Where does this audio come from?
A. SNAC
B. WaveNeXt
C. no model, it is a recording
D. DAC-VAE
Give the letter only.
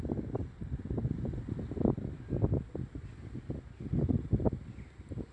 C